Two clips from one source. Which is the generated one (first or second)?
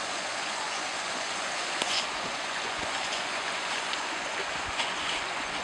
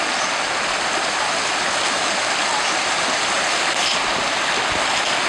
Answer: first